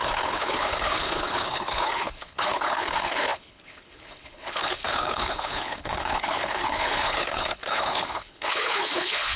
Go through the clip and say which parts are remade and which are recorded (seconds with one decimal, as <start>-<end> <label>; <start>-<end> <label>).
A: 0.0-9.4 remade